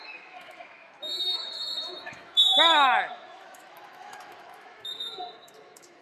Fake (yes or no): yes